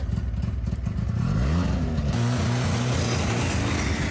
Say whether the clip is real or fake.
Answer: real